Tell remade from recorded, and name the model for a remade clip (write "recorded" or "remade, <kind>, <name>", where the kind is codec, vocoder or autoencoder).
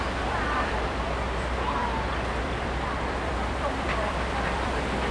remade, vocoder, BigVGAN v2